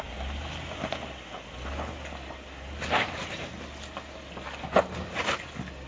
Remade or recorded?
recorded